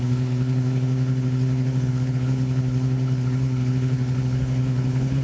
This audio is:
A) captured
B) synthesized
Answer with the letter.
B